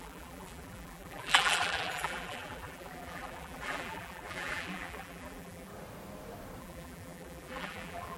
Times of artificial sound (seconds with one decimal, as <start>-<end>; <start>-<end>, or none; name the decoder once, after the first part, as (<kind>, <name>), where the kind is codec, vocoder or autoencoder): 0.0-5.7 (vocoder, BigVGAN v2); 6.6-8.2